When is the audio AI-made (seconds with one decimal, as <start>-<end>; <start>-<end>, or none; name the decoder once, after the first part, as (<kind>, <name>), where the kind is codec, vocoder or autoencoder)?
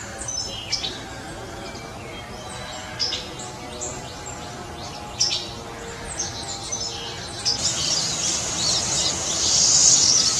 none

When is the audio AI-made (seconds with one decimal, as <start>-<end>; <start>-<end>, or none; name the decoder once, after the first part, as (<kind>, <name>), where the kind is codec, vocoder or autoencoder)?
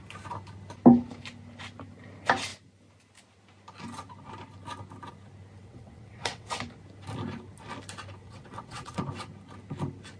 5.6-6.6 (vocoder, WaveNeXt); 8.2-9.0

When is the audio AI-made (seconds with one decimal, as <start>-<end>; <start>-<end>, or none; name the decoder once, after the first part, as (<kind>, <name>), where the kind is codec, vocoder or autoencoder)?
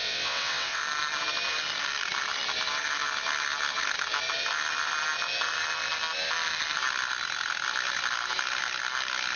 0.0-0.8 (vocoder, WaveNeXt)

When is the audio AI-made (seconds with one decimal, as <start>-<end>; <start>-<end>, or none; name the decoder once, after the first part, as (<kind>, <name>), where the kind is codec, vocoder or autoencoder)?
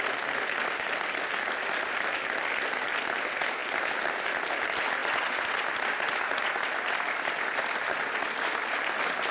none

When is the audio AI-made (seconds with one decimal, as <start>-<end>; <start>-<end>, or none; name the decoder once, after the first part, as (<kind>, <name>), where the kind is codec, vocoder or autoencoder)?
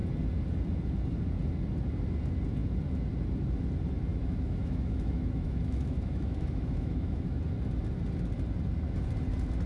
4.1-7.4 (autoencoder, DAC-VAE)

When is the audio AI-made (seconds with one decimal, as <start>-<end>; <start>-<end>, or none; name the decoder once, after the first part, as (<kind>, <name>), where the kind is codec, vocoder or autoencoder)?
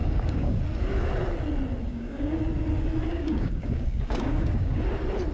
0.0-0.6 (codec, DAC); 1.8-2.4; 3.1-4.8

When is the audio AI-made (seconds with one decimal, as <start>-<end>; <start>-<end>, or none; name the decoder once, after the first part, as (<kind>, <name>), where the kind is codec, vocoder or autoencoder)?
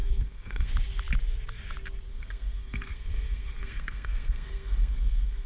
0.0-0.7 (codec, SNAC); 2.1-5.5